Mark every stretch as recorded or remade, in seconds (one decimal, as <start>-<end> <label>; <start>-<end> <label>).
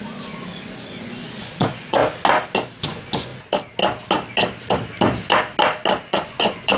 0.0-2.0 remade; 2.0-2.8 recorded; 2.8-3.3 remade; 3.3-6.1 recorded; 6.1-6.8 remade